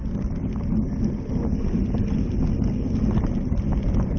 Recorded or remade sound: recorded